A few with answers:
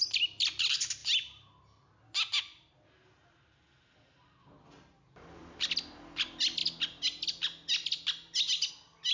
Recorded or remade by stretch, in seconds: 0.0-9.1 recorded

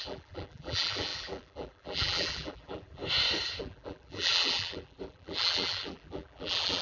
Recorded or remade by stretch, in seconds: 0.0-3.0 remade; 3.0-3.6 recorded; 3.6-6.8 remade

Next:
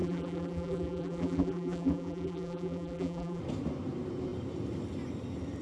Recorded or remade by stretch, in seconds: 0.0-3.4 remade; 3.4-5.6 recorded